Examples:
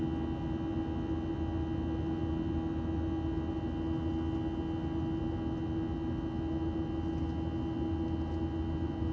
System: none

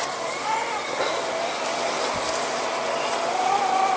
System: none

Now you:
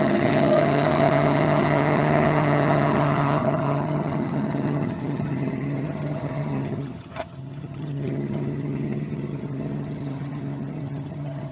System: vocoder, HiFi-GAN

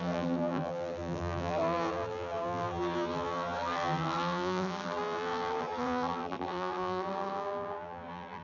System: vocoder, BigVGAN v2